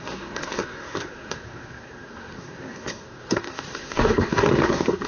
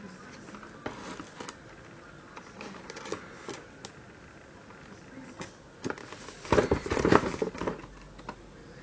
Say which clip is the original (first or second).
second